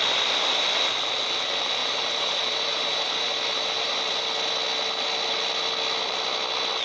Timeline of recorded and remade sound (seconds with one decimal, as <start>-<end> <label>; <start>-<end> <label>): 0.0-1.8 recorded; 1.8-4.0 remade; 4.0-6.8 recorded